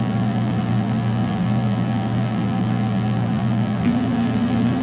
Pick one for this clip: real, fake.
fake